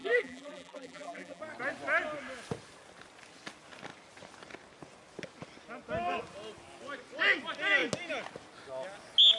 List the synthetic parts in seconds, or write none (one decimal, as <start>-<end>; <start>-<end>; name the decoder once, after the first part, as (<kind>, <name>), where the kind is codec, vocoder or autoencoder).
0.0-1.4 (vocoder, BigVGAN v2)